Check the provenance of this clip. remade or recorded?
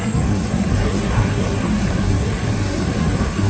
remade